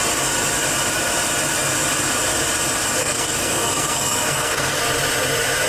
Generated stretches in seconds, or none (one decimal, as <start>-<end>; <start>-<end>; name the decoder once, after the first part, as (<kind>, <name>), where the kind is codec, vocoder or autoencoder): 3.0-4.8 (codec, SNAC)